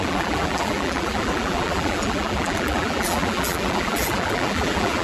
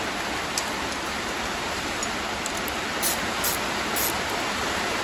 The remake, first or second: first